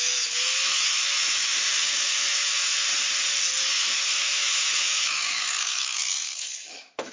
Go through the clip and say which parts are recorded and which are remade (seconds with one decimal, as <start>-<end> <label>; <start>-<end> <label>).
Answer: 0.0-2.9 remade; 2.9-3.7 recorded; 3.7-7.1 remade